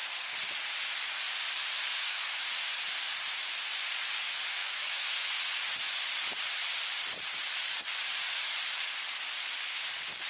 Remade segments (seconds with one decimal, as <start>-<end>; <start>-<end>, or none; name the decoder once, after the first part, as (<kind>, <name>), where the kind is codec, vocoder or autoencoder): 1.9-2.4 (autoencoder, DAC-VAE); 4.6-5.4